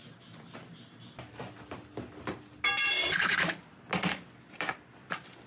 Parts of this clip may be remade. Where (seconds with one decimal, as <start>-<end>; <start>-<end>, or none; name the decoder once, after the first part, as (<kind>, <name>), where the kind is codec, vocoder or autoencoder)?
none